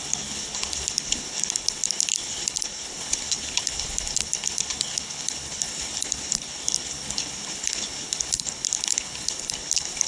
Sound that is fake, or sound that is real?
fake